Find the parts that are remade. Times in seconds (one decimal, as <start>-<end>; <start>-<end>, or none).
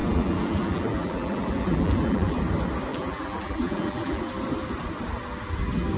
0.0-2.4; 2.9-4.2